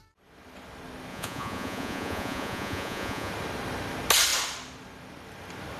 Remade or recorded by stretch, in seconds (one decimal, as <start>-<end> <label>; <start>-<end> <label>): 0.0-1.1 recorded; 1.1-3.3 remade; 3.3-5.8 recorded